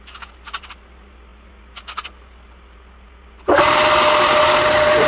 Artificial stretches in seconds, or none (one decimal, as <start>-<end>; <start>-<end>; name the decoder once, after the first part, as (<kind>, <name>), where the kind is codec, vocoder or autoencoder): none